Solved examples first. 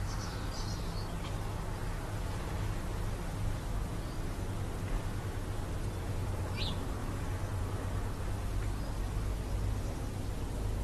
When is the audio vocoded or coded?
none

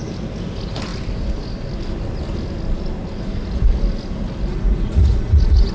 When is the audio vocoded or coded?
4.5-5.7

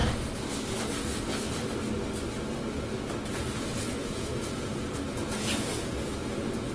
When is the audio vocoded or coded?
0.9-1.3; 3.3-6.7

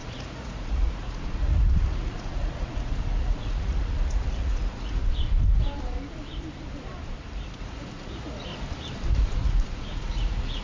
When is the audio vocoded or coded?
0.0-5.0; 7.6-8.5; 9.2-10.6

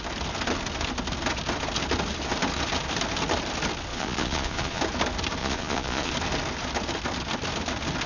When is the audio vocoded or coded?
3.9-4.8; 5.4-6.1

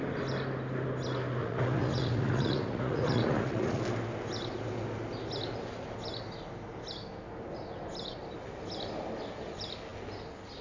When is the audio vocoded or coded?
1.4-3.8